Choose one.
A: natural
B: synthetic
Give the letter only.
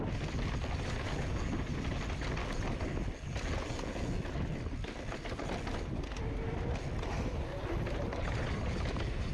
A